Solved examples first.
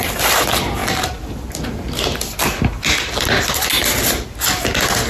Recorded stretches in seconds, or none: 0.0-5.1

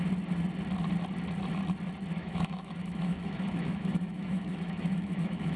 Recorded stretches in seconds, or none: 0.0-2.2

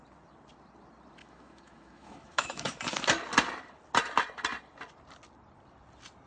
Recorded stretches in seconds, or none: 0.0-1.2; 2.8-6.3

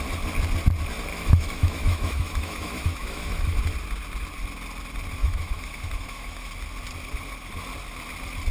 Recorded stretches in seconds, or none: 0.0-1.1; 3.6-5.2; 6.5-8.5

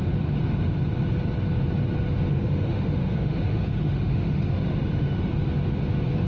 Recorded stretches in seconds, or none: 0.0-2.3; 5.3-6.3

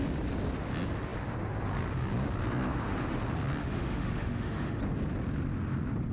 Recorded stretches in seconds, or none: 0.0-3.6; 4.8-6.1

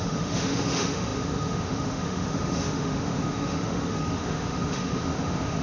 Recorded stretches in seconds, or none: none

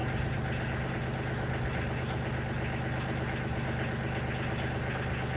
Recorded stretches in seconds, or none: 0.0-5.4